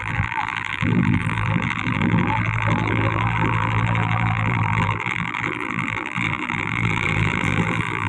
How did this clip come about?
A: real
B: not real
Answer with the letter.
B